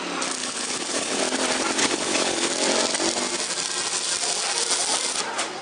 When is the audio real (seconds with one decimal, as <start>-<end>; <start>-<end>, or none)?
0.0-0.4; 1.2-1.8; 2.5-5.6